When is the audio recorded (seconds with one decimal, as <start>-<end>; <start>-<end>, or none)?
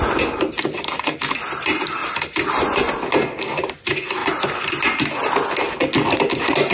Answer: 0.0-6.7